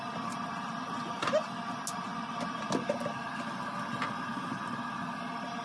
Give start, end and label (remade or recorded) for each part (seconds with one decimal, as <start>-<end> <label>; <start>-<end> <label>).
0.0-5.6 recorded